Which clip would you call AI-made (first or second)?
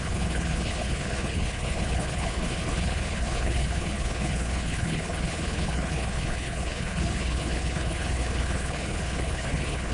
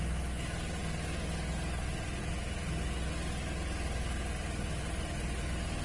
first